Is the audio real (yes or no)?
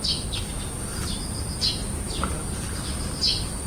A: yes